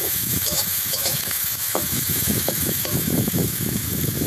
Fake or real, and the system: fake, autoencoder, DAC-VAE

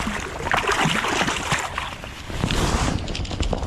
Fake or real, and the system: real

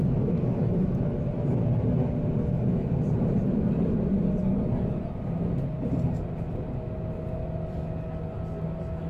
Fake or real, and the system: real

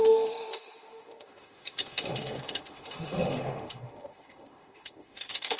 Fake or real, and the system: fake, autoencoder, DAC-VAE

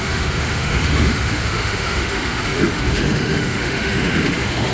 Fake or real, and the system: fake, autoencoder, DAC-VAE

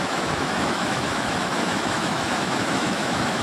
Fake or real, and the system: fake, autoencoder, DAC-VAE